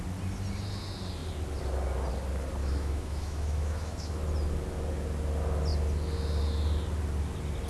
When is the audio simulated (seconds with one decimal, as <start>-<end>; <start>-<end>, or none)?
2.6-4.2